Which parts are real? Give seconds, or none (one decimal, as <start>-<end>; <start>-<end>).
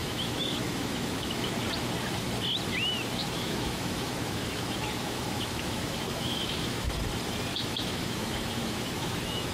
1.6-3.2; 6.9-7.5